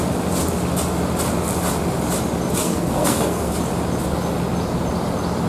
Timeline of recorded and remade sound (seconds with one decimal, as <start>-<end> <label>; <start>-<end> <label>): 0.0-2.6 recorded; 2.6-3.5 remade; 3.5-5.5 recorded